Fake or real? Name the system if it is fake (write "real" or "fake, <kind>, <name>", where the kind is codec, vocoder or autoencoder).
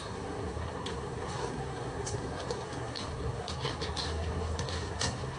fake, codec, SNAC